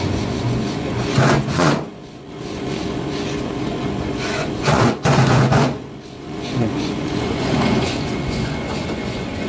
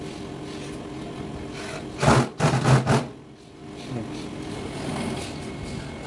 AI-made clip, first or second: first